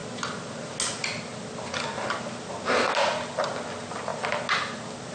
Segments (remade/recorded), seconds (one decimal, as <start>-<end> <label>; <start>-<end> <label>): 0.0-5.1 recorded